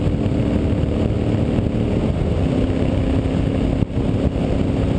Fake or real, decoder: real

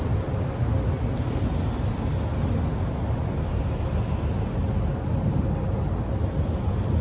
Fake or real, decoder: real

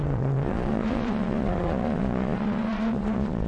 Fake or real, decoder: fake, vocoder, Vocos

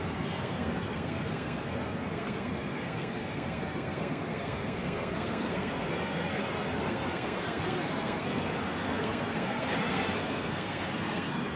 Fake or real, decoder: fake, codec, SNAC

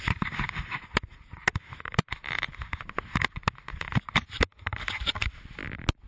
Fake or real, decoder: real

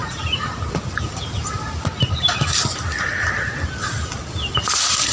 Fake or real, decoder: real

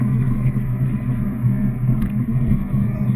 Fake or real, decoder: fake, codec, SNAC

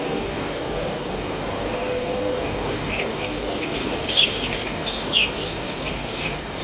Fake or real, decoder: fake, codec, DAC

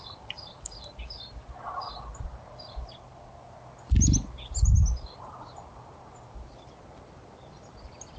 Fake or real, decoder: real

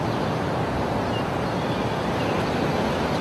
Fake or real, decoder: fake, vocoder, BigVGAN v2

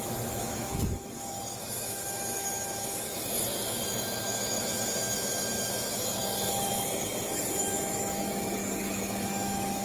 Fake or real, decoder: fake, autoencoder, DAC-VAE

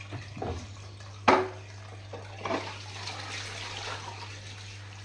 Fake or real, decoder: real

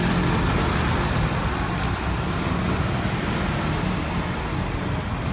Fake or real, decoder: real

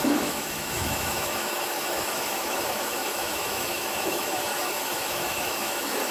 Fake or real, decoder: fake, autoencoder, DAC-VAE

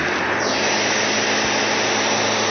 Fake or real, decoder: real